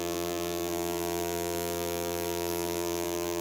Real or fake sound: fake